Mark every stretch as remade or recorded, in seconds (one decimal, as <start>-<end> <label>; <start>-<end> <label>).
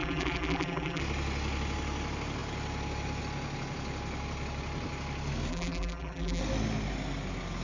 0.0-1.0 remade; 1.0-5.5 recorded; 5.5-6.4 remade; 6.4-7.6 recorded